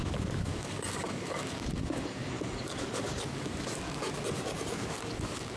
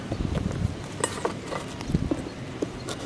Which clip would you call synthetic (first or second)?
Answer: first